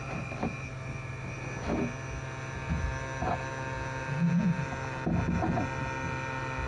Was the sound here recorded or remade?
recorded